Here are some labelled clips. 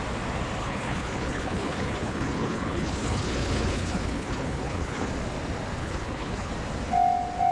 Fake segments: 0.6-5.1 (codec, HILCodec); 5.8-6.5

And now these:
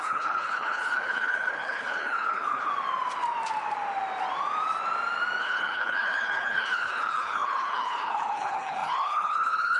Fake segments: 0.0-2.7 (codec, HILCodec); 5.4-9.8